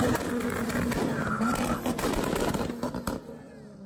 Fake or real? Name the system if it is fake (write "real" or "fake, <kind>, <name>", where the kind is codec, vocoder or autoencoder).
real